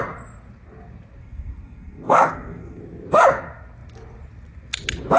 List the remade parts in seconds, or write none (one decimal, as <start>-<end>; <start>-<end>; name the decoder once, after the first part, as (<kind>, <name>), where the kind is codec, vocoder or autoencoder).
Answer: 1.2-2.8 (codec, SNAC)